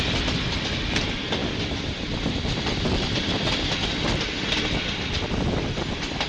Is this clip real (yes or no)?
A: yes